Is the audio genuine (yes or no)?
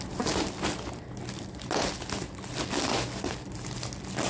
yes